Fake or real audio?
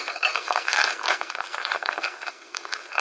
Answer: fake